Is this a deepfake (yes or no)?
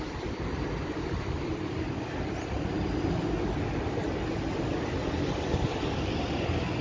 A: no